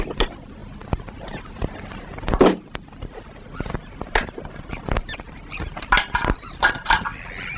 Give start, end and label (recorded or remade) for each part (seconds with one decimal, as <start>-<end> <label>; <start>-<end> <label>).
0.0-7.6 recorded